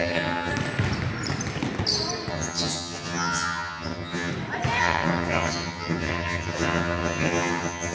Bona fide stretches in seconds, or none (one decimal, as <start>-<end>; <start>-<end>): 0.5-2.3; 4.3-4.8